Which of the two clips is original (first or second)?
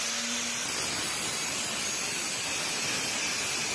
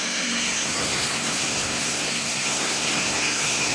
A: first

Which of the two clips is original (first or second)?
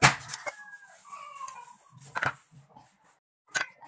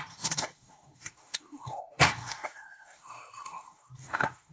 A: first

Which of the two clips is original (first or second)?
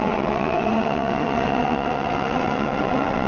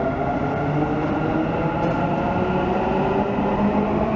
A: second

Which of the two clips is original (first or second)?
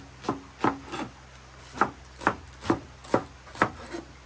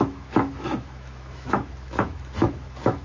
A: first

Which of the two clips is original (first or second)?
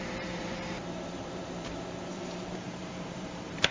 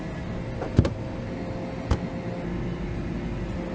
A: second